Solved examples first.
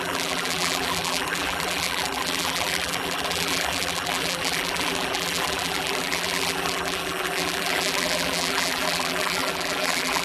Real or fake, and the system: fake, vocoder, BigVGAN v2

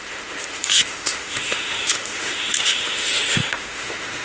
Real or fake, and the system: fake, autoencoder, DAC-VAE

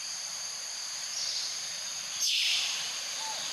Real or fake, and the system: fake, vocoder, BigVGAN v2